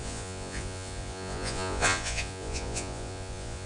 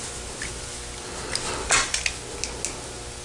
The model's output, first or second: first